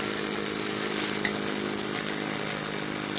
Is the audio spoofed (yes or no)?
no